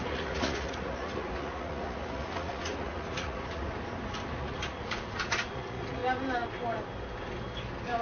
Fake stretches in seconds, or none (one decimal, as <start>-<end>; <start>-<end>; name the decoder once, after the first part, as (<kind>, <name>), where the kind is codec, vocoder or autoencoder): 0.0-3.6 (vocoder, Vocos); 4.3-6.0